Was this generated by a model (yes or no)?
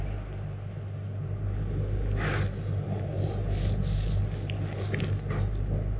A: no